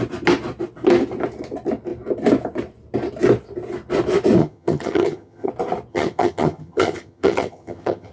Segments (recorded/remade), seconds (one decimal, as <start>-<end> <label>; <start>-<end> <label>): 0.0-4.4 recorded; 4.4-5.5 remade; 5.5-5.9 recorded; 5.9-8.1 remade